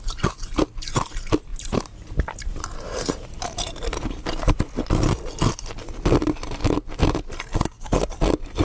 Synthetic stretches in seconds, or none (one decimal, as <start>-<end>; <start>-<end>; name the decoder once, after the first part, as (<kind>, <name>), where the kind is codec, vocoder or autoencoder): 1.5-4.5 (vocoder, BigVGAN v2)